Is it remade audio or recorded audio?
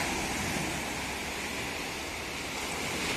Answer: recorded